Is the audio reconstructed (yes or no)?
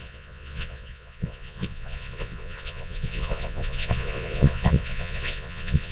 yes